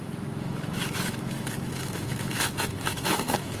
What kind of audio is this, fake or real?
fake